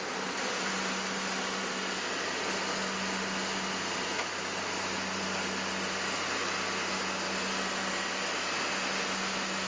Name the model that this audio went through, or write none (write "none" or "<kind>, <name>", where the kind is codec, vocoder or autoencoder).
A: none